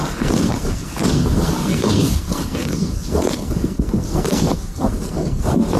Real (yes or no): no